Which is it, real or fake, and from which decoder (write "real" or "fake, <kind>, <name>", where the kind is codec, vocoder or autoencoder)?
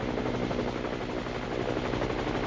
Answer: real